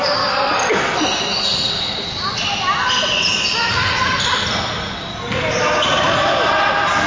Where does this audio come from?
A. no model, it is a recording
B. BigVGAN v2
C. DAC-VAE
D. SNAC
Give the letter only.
A